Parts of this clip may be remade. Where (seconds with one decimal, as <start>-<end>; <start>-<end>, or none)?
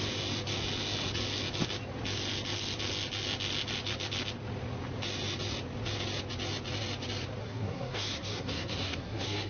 7.4-9.5